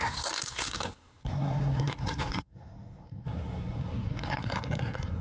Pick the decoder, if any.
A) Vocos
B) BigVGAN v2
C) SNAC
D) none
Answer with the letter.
C